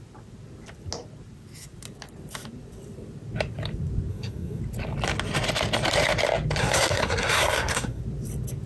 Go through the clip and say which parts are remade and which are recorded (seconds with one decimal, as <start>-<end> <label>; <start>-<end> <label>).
0.0-4.1 recorded; 4.1-4.6 remade; 4.6-6.6 recorded; 6.6-8.0 remade; 8.0-8.7 recorded